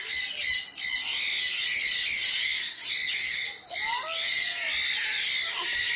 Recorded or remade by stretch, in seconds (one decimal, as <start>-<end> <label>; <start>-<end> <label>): 0.0-2.4 recorded; 2.4-2.9 remade; 2.9-6.0 recorded

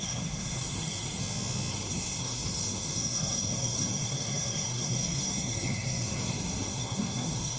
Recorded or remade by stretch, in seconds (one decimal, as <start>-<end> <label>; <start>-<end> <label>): 0.0-1.2 remade; 1.2-1.7 recorded; 1.7-7.6 remade

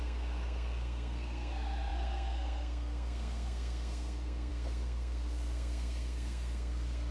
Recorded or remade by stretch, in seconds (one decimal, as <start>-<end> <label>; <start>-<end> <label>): 0.0-7.1 remade

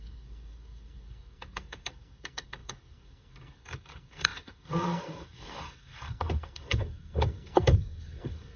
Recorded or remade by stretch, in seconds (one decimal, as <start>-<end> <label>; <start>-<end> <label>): 0.0-8.6 remade